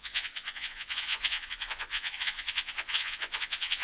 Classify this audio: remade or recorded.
remade